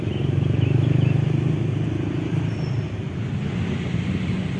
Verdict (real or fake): real